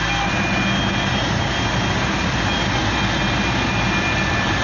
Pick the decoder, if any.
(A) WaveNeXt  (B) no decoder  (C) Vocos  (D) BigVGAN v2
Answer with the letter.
B